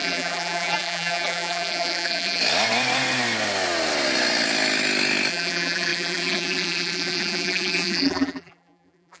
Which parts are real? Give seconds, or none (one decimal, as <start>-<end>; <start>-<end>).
2.4-5.3